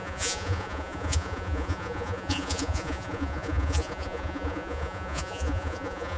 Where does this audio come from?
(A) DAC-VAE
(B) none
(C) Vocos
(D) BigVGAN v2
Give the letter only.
C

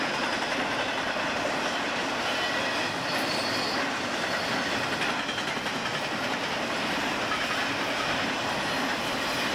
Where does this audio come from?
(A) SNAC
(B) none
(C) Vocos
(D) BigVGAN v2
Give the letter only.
B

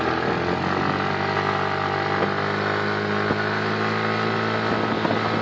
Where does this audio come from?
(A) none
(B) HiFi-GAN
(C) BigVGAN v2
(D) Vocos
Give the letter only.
A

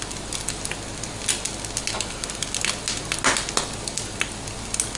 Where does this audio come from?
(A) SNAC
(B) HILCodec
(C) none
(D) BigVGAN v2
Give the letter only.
C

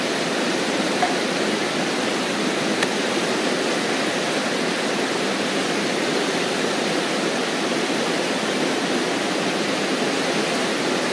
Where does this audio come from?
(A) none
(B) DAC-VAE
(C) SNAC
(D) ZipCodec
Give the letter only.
A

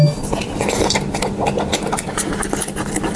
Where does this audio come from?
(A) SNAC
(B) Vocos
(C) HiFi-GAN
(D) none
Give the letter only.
D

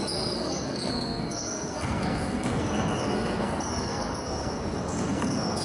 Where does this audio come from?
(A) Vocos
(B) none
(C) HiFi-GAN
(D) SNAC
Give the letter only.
D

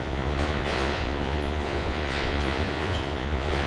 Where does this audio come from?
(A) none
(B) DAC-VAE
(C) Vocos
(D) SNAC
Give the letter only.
C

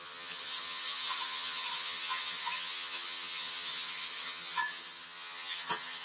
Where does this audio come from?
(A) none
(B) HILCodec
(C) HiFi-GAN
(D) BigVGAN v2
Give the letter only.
C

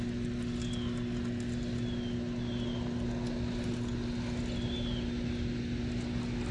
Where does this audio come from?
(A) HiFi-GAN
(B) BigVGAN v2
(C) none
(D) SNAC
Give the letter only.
C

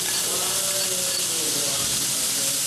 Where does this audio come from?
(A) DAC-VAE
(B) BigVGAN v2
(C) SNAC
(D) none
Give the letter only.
D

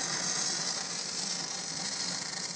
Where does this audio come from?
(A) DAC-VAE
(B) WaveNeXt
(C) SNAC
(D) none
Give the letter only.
D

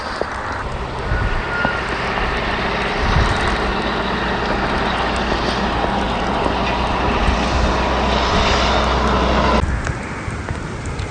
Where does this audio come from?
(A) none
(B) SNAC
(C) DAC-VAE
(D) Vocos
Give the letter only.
A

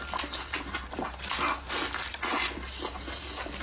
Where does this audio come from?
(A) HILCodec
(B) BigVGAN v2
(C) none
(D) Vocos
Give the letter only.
C